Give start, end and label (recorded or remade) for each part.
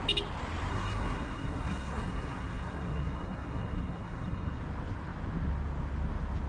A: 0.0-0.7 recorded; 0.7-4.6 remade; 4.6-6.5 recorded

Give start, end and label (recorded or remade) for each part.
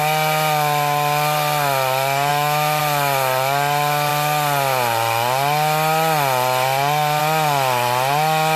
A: 0.0-2.3 recorded; 2.3-2.8 remade; 2.8-8.6 recorded